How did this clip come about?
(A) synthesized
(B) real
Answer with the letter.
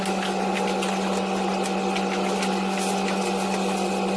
B